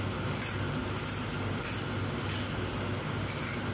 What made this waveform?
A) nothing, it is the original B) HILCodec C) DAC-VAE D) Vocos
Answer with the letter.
A